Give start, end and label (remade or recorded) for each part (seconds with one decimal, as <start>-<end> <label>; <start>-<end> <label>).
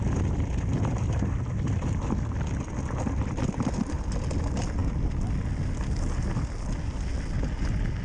0.0-8.0 recorded